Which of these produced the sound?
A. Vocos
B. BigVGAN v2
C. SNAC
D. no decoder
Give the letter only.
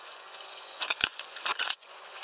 A